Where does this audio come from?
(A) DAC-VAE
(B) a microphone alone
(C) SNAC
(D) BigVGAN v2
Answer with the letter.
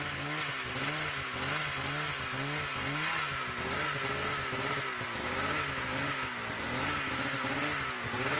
B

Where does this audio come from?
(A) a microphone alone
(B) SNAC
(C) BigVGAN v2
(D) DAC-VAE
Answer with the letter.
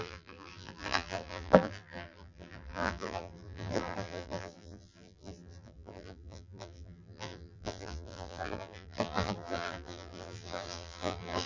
C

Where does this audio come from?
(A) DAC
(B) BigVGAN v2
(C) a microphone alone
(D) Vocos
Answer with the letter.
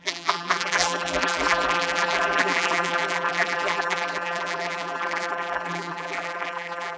B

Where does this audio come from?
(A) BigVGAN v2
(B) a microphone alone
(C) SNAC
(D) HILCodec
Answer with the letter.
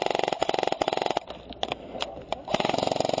B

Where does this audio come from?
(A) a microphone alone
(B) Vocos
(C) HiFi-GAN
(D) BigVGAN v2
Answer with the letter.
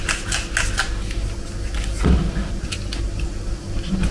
A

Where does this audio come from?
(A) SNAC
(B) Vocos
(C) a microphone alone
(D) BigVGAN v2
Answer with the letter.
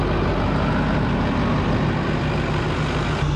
C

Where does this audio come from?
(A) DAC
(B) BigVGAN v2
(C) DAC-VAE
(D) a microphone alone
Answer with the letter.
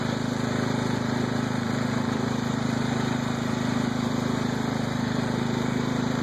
B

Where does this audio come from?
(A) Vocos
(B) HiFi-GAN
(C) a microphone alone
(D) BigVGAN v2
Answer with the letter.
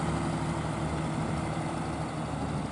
C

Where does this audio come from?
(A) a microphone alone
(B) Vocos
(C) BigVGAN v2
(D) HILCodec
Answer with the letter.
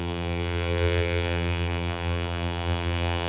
C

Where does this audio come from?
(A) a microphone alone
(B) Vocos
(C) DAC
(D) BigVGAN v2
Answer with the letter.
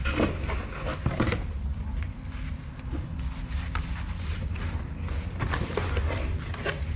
A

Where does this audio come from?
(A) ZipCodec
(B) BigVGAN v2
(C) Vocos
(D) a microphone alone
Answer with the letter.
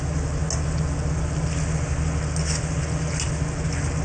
D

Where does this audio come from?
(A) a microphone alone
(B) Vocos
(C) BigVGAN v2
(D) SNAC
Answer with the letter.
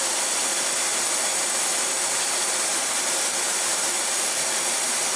C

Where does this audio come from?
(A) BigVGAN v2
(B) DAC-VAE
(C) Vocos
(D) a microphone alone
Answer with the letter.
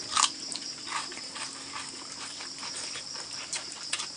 A